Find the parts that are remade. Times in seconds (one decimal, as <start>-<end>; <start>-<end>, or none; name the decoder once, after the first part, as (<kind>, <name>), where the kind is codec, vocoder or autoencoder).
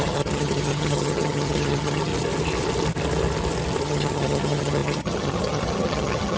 0.0-2.1 (vocoder, HiFi-GAN); 3.8-6.4